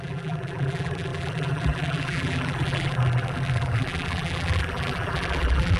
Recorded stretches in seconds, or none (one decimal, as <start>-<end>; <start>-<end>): none